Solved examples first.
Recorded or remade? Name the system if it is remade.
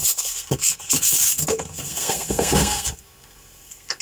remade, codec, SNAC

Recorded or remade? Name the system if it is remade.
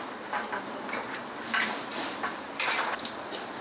recorded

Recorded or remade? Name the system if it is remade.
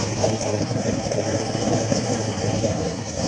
remade, codec, SNAC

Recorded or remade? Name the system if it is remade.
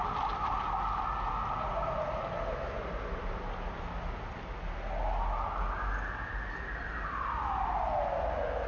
recorded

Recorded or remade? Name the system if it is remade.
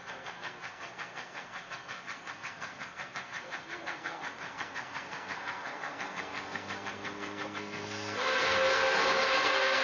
remade, codec, SNAC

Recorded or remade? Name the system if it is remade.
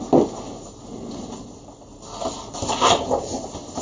recorded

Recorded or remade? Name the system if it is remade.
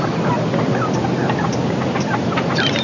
recorded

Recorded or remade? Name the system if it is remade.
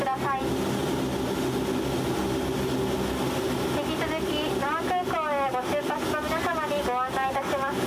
recorded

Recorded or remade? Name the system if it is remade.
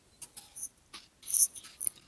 recorded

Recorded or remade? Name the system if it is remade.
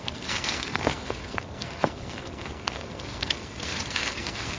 remade, codec, SNAC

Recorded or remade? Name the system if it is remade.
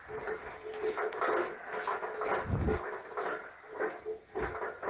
recorded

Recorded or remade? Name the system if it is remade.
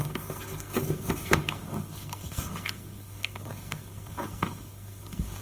remade, codec, SNAC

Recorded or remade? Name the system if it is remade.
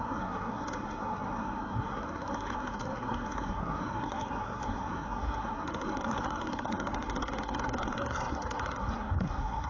remade, codec, SNAC